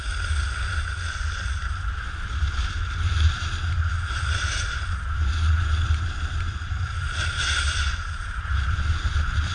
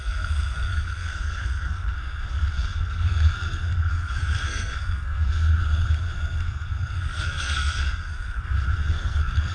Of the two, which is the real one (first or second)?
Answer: first